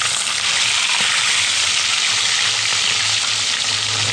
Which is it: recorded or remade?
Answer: recorded